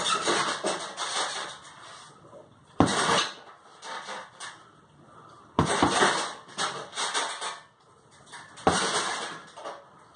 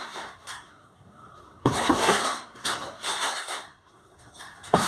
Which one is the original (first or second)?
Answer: first